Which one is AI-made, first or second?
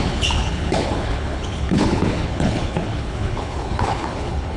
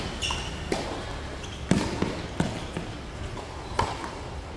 first